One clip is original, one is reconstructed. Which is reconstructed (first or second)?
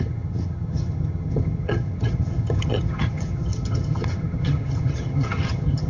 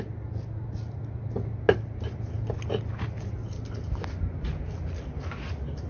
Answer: first